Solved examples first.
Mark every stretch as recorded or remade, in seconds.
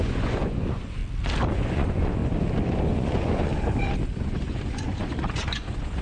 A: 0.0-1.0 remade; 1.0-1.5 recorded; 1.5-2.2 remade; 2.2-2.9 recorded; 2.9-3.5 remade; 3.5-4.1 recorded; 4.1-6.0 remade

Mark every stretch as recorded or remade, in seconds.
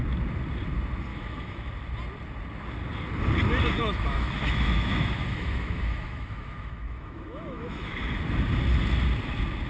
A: 0.0-1.1 recorded; 1.1-1.7 remade; 1.7-3.8 recorded; 3.8-7.9 remade; 7.9-9.7 recorded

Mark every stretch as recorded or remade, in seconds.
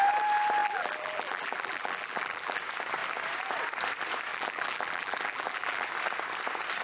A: 0.0-0.6 recorded; 0.6-2.6 remade; 2.6-4.3 recorded; 4.3-5.9 remade; 5.9-6.8 recorded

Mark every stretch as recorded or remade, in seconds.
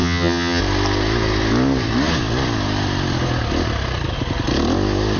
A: 0.0-0.6 remade; 0.6-5.2 recorded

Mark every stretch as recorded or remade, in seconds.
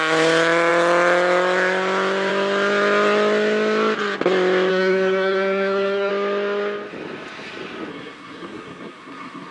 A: 0.0-4.7 recorded; 4.7-6.1 remade; 6.1-7.9 recorded; 7.9-9.5 remade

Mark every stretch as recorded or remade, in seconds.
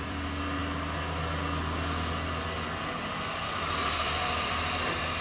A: 0.0-0.6 remade; 0.6-3.5 recorded; 3.5-5.2 remade